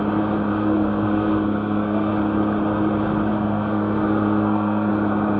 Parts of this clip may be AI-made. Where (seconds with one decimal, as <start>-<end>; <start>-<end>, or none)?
0.5-2.1; 3.3-4.9